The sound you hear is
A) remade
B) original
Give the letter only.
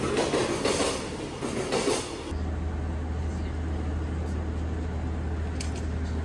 B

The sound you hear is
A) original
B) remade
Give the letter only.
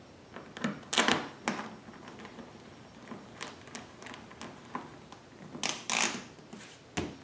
A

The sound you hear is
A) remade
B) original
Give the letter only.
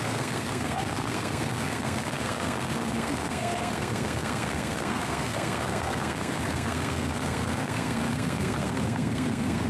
A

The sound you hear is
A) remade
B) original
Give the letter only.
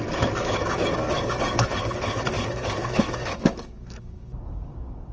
A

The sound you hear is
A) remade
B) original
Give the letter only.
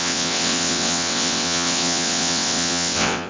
A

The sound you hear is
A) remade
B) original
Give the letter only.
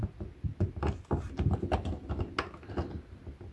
B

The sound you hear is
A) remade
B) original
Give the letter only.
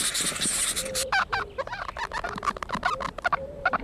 A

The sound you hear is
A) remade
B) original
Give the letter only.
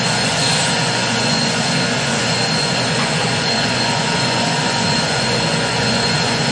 A